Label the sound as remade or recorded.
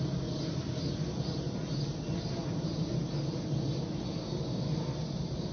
recorded